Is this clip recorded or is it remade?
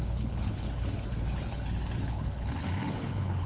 remade